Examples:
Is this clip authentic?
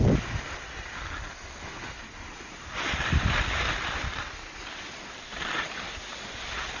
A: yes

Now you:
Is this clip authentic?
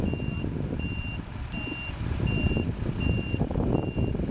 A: yes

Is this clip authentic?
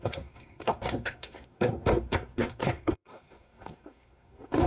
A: no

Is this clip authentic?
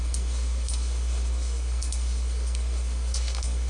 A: no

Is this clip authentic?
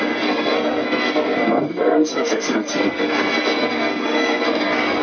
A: no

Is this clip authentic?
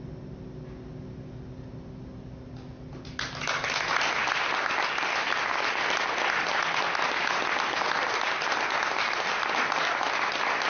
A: yes